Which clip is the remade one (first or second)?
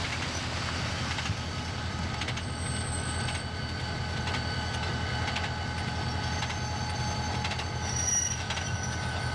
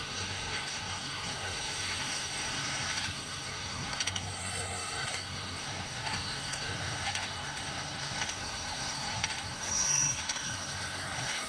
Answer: second